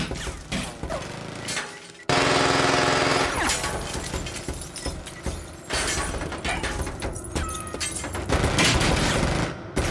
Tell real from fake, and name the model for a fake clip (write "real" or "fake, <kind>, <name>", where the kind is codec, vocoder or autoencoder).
real